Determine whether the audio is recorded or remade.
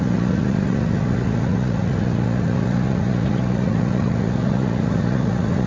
remade